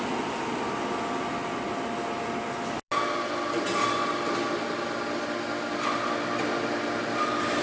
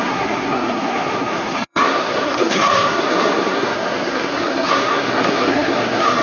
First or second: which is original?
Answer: first